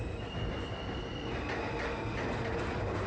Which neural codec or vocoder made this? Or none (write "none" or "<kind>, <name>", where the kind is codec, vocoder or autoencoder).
none